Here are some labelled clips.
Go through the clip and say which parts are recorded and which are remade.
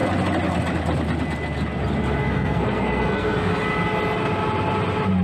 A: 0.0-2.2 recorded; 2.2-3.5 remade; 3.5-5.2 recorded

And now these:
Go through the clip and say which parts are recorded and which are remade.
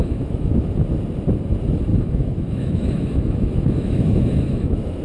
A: 0.0-0.7 remade; 0.7-1.9 recorded; 1.9-5.0 remade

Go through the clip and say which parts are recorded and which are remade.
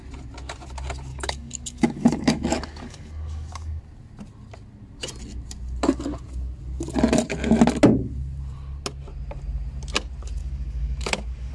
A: 0.0-1.1 recorded; 1.1-3.8 remade; 3.8-10.4 recorded; 10.4-11.5 remade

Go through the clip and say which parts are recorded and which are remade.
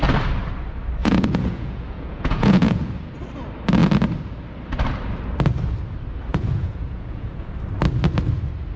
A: 0.0-1.0 recorded; 1.0-3.1 remade; 3.1-6.3 recorded; 6.3-7.5 remade; 7.5-8.8 recorded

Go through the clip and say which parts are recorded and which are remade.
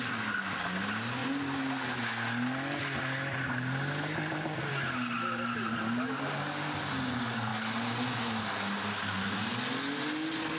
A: 0.0-10.6 recorded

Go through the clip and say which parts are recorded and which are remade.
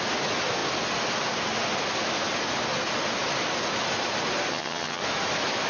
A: 0.0-4.5 recorded; 4.5-5.0 remade; 5.0-5.7 recorded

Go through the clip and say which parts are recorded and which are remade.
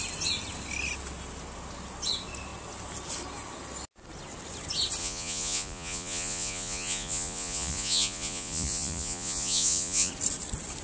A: 0.0-5.0 recorded; 5.0-10.1 remade; 10.1-10.8 recorded